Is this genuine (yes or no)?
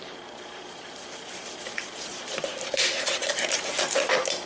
no